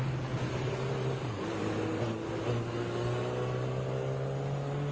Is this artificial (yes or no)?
no